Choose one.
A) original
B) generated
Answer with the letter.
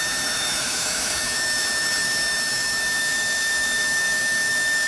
B